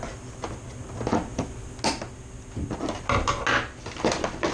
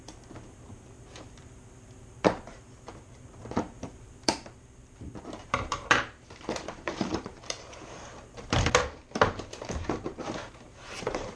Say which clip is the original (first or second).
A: first